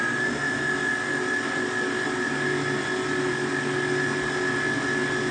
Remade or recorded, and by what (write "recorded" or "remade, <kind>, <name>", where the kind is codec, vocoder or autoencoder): recorded